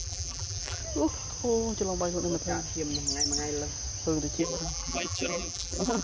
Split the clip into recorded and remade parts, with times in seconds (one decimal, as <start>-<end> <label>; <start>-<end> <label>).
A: 0.0-0.8 remade; 0.8-4.4 recorded; 4.4-6.0 remade